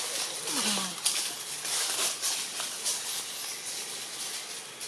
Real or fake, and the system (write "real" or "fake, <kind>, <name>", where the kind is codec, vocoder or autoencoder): real